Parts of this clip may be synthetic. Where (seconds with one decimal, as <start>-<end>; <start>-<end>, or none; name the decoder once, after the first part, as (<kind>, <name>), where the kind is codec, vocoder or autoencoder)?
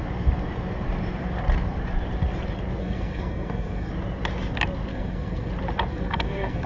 2.8-3.9 (codec, SNAC); 4.9-5.5; 5.9-6.7